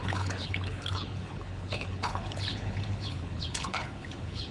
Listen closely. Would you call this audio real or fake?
fake